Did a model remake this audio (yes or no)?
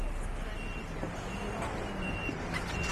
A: no